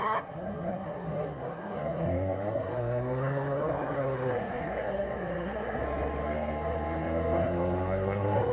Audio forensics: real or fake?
fake